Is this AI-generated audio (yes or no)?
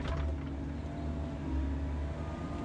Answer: no